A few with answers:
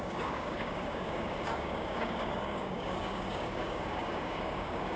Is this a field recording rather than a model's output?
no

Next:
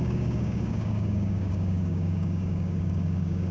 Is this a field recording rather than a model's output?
no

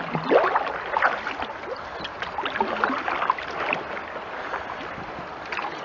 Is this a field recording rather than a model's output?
yes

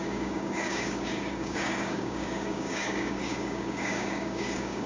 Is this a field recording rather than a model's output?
no